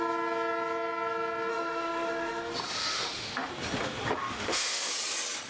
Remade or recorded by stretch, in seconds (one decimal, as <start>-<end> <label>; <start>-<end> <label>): 0.0-1.5 recorded; 1.5-2.5 remade; 2.5-2.9 recorded; 2.9-3.5 remade; 3.5-4.2 recorded; 4.2-4.9 remade; 4.9-5.5 recorded